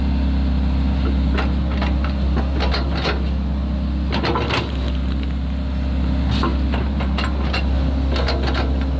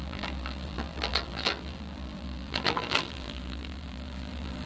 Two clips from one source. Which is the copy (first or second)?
second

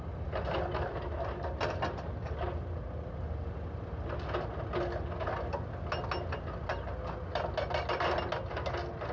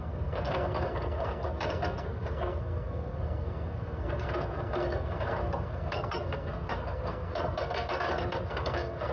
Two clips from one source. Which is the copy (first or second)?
second